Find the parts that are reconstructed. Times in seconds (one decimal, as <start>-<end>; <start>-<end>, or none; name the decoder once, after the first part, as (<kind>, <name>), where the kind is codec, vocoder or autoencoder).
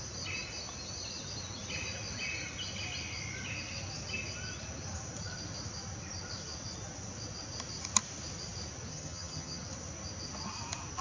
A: 8.9-9.6 (vocoder, HiFi-GAN)